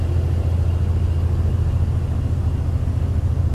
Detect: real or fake real